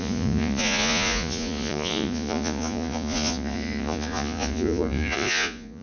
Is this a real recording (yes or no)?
no